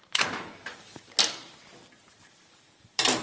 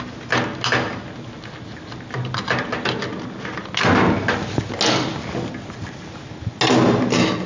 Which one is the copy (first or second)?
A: first